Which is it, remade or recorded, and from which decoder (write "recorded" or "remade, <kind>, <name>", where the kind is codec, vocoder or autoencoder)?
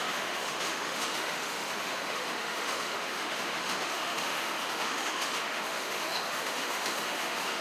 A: remade, autoencoder, DAC-VAE